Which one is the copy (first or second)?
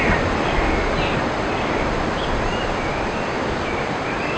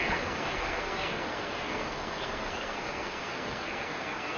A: second